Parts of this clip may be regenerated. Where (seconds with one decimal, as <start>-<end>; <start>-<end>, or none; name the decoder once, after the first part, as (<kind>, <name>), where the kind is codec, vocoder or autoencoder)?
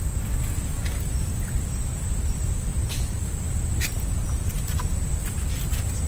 none